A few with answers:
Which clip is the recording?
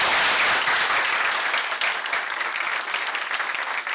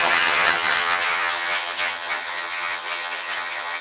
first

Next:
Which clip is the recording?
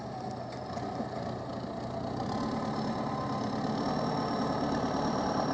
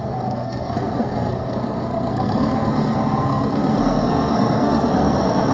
first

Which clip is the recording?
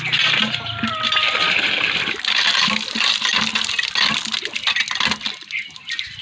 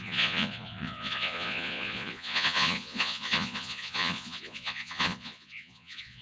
first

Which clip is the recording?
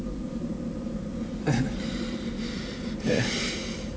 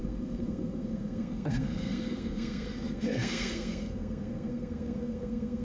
first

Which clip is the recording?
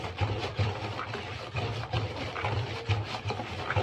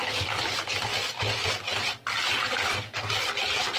second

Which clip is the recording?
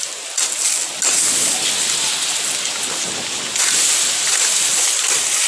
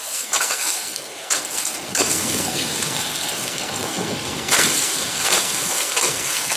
first